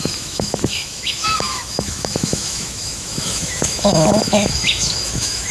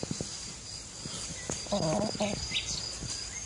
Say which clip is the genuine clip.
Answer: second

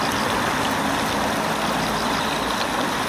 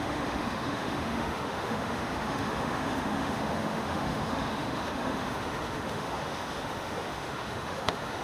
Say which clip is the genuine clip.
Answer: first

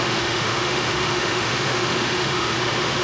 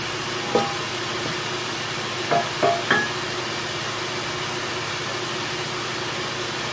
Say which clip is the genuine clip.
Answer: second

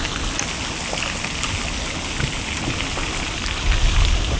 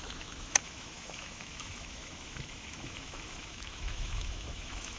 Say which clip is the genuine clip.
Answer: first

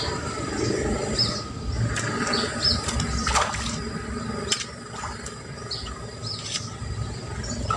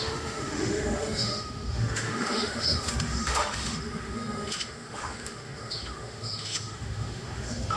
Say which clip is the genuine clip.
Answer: first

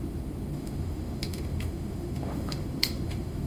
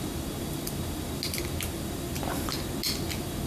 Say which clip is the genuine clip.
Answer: second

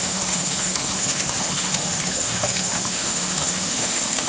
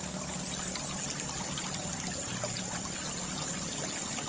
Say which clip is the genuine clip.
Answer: second